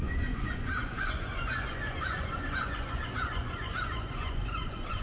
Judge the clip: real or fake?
fake